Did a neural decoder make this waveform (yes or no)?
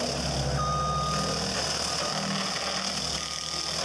no